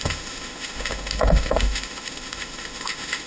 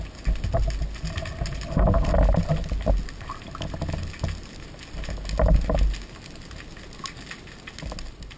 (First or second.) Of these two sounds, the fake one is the first